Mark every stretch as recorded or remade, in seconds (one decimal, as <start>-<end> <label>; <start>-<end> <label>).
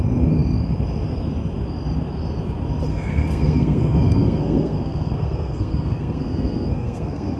0.0-2.9 recorded; 2.9-7.4 remade